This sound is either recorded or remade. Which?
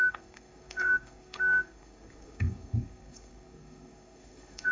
remade